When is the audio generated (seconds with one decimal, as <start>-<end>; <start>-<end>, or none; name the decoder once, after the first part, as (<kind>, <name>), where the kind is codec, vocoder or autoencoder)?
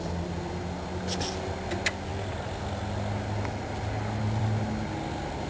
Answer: none